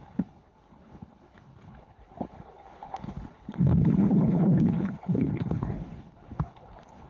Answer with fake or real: fake